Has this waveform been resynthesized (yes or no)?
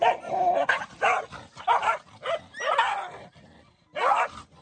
no